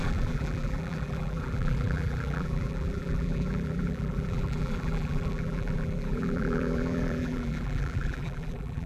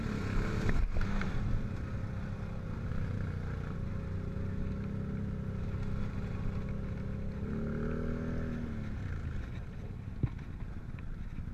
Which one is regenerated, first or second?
first